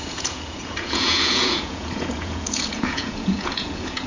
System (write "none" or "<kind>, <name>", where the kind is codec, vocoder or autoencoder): vocoder, Vocos